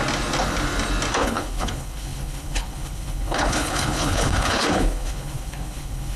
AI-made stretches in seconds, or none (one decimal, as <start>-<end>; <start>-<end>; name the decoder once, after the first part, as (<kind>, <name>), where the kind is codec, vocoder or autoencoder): 1.1-6.2 (codec, HILCodec)